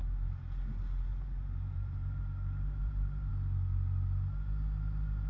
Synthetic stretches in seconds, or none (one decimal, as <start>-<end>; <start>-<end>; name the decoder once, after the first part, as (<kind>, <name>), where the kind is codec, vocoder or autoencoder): 1.1-2.2 (vocoder, BigVGAN v2); 2.8-3.3